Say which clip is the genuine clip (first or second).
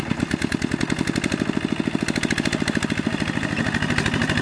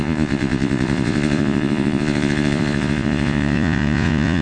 first